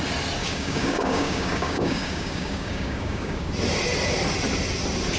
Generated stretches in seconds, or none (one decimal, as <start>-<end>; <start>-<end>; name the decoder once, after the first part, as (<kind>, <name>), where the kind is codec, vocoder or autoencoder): 0.4-3.5 (codec, DAC)